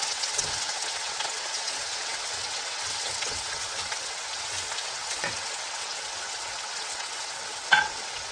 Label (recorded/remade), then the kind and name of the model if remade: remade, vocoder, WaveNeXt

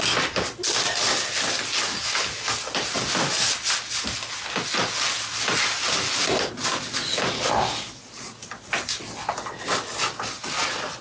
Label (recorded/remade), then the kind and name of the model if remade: recorded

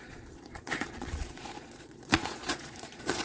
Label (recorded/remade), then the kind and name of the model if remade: remade, vocoder, Vocos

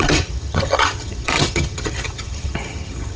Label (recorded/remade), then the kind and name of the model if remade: remade, vocoder, HiFi-GAN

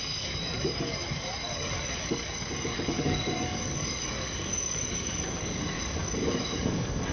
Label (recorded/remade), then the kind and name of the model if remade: remade, codec, DAC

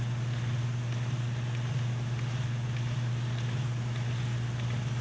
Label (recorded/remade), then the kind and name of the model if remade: recorded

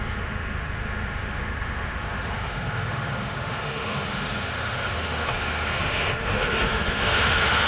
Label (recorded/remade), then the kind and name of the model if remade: remade, autoencoder, DAC-VAE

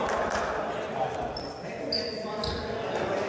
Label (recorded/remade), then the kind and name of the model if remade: recorded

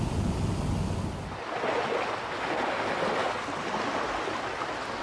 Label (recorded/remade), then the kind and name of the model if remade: recorded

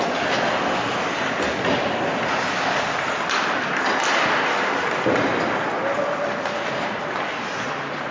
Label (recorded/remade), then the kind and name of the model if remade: recorded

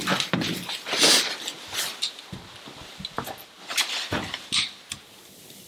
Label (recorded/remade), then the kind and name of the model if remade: recorded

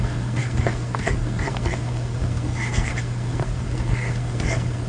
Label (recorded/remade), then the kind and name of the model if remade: remade, codec, SNAC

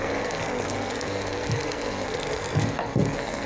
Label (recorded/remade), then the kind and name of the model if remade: remade, codec, SNAC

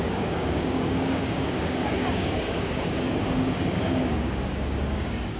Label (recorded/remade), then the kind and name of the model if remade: remade, codec, DAC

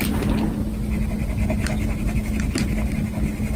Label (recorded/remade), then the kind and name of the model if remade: recorded